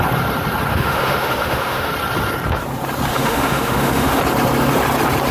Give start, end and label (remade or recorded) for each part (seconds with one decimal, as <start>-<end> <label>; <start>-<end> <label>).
0.0-0.7 recorded; 0.7-1.9 remade; 1.9-3.1 recorded; 3.1-4.2 remade; 4.2-5.3 recorded